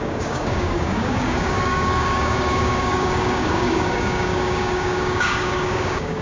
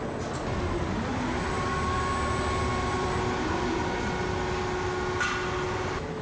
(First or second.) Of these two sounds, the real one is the second